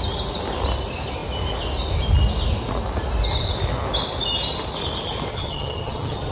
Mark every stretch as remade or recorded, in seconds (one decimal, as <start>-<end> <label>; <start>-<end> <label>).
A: 0.0-5.3 recorded; 5.3-6.3 remade